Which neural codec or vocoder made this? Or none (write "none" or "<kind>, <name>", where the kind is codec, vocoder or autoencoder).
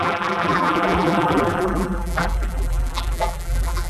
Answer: vocoder, BigVGAN v2